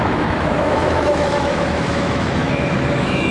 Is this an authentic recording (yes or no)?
no